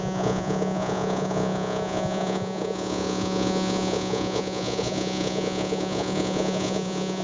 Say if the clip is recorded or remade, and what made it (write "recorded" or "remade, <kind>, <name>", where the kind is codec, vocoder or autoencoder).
remade, vocoder, Vocos